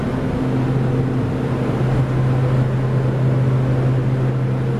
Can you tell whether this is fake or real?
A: real